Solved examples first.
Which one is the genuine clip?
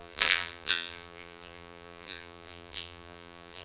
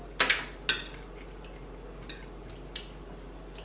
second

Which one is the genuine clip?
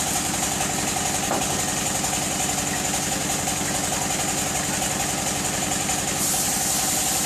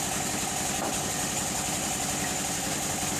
first